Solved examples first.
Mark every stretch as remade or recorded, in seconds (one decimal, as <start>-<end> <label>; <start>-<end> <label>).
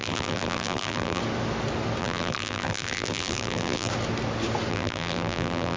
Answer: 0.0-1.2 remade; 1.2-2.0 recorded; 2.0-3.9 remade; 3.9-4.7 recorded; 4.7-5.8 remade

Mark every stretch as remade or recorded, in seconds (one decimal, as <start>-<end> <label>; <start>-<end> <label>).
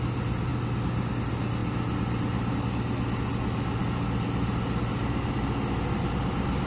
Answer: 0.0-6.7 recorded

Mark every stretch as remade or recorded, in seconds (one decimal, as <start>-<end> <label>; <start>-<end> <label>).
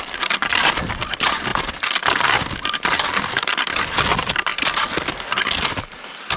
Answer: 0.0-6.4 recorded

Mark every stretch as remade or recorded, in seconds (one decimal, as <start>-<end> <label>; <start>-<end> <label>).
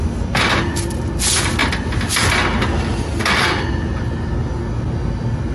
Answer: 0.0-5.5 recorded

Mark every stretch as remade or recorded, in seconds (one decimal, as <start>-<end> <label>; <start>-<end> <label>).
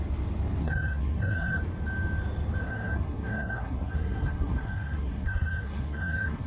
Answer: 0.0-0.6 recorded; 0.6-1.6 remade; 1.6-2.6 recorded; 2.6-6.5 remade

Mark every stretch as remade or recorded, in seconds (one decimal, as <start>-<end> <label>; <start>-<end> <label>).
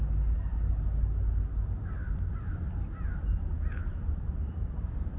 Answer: 0.0-5.2 recorded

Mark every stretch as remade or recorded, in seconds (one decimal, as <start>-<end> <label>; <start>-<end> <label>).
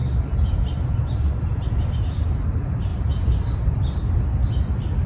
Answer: 0.0-2.9 recorded; 2.9-4.1 remade; 4.1-5.1 recorded